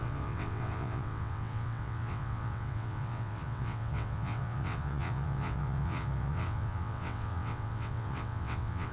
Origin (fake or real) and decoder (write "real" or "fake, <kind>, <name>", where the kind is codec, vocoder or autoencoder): fake, vocoder, WaveNeXt